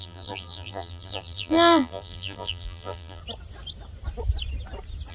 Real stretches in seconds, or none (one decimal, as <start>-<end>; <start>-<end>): 3.2-5.1